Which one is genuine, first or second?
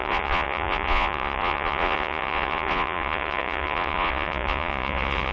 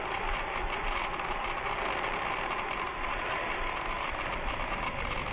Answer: second